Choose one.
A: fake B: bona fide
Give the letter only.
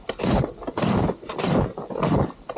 B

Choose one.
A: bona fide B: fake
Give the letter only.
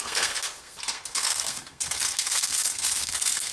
B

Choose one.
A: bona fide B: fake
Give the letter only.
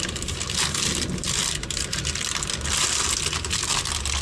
A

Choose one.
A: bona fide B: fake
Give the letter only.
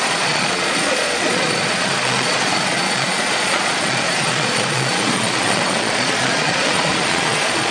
B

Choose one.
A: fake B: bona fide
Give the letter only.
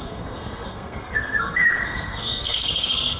A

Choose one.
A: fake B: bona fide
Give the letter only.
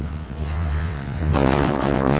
A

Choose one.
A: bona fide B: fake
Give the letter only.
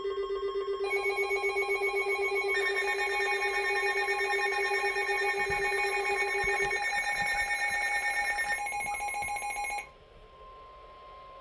A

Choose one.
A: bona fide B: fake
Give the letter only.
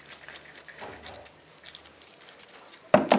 A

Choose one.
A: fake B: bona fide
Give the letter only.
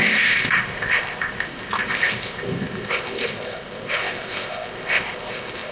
A